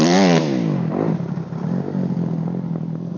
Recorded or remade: recorded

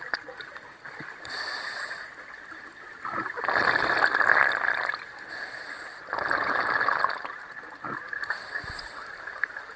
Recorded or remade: recorded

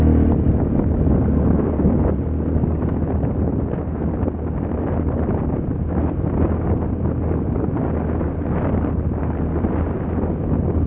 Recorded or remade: remade